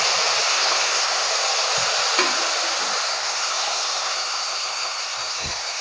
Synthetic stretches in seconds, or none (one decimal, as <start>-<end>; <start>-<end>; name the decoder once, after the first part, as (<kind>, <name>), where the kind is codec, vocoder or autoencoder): 0.5-1.3 (codec, SNAC); 3.1-5.8

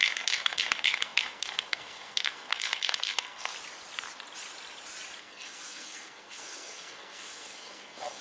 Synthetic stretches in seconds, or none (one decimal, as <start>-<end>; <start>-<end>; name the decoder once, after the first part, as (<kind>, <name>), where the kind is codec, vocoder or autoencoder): 0.0-3.5 (codec, SNAC); 5.2-8.2

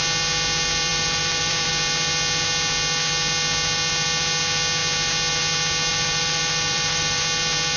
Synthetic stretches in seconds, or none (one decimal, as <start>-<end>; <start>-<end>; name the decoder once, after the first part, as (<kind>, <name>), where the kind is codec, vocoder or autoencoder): 0.9-1.7 (vocoder, BigVGAN v2); 5.9-7.2

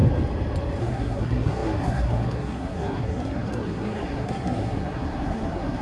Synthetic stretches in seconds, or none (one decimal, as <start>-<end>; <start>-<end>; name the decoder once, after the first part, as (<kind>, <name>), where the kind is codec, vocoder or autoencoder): 0.8-5.8 (codec, SNAC)

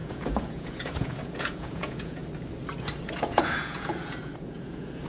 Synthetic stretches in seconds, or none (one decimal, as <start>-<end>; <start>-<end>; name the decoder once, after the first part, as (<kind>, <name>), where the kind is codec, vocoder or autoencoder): 0.0-2.2 (vocoder, Vocos); 3.1-5.1

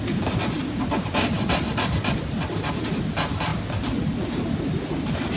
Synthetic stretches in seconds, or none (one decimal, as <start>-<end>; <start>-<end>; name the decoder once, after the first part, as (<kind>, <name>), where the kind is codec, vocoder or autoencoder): none